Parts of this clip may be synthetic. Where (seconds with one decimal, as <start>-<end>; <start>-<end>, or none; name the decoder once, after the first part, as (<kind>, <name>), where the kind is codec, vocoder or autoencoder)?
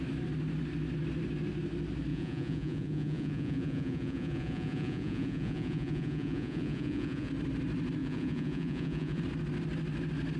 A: 2.1-7.3 (vocoder, Vocos); 8.0-9.2